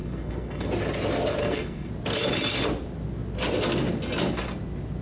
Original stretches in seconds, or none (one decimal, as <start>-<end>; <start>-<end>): 0.7-1.4; 1.9-5.0